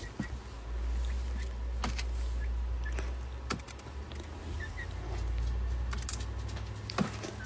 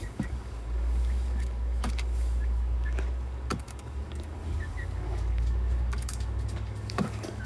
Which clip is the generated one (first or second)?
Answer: second